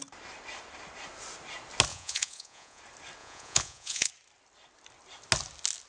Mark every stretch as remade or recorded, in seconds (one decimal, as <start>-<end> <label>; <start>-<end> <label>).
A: 0.0-1.9 recorded; 1.9-2.8 remade; 2.8-3.2 recorded; 3.2-4.1 remade; 4.1-5.9 recorded